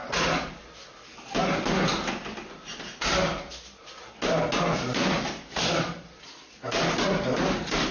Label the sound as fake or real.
real